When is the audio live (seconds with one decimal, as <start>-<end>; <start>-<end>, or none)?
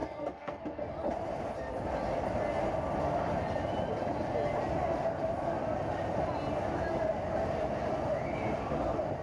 0.8-9.2